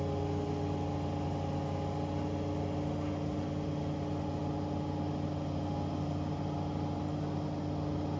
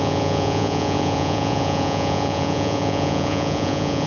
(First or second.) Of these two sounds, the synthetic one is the second